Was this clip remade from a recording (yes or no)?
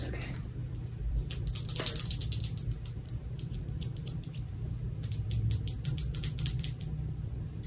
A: yes